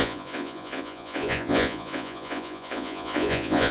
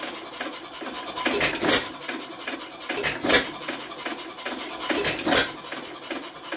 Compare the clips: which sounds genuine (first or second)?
second